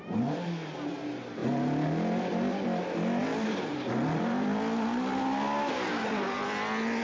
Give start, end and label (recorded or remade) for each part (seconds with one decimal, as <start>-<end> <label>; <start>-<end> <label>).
0.0-3.2 recorded; 3.2-7.0 remade